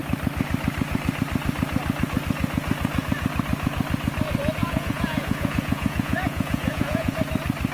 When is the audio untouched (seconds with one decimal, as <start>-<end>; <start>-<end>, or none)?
0.0-4.6; 7.2-7.7